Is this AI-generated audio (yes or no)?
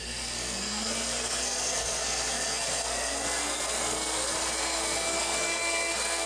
yes